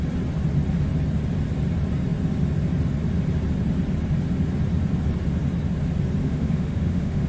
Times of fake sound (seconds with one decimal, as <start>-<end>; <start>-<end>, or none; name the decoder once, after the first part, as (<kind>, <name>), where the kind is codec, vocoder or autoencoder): 6.2-7.3 (autoencoder, DAC-VAE)